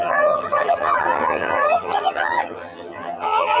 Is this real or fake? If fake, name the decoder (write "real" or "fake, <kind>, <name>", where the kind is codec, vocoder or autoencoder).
fake, vocoder, HiFi-GAN